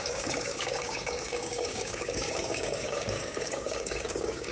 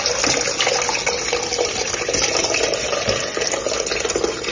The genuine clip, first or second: second